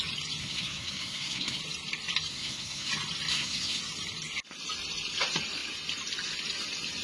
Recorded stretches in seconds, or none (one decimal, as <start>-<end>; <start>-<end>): 0.0-0.4; 1.6-2.3; 2.9-3.3; 3.8-7.0